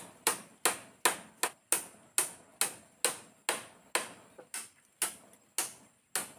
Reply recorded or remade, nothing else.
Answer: recorded